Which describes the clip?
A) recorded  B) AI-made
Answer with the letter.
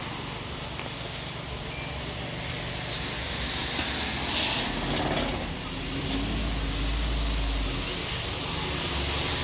A